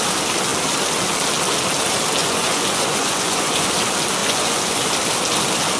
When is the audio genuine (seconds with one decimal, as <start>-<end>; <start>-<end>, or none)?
0.0-2.2; 3.7-4.2; 4.9-5.8